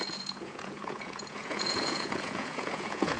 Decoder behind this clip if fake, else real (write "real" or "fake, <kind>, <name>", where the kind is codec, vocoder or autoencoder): fake, vocoder, Vocos